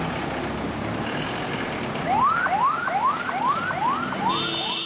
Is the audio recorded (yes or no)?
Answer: yes